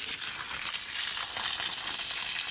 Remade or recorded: recorded